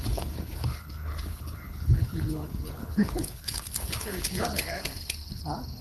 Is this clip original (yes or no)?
no